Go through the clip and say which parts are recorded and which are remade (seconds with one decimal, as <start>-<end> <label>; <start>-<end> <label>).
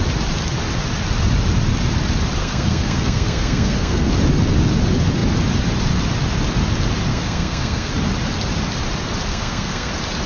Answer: 0.0-2.4 recorded; 2.4-4.1 remade; 4.1-7.1 recorded; 7.1-7.9 remade; 7.9-9.3 recorded; 9.3-9.9 remade; 9.9-10.3 recorded